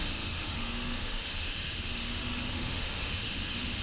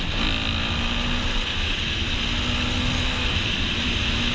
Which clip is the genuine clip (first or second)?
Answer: second